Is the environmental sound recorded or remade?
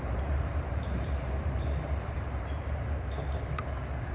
remade